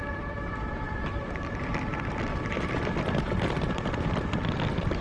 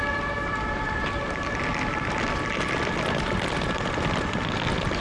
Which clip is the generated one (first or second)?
first